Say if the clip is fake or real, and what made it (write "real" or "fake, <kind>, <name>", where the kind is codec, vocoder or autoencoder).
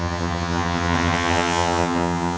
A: fake, vocoder, HiFi-GAN